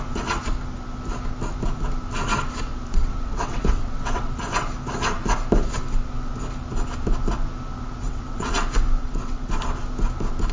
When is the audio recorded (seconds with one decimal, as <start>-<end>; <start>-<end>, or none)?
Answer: 0.0-2.9; 4.3-8.0; 8.5-9.0; 9.5-10.5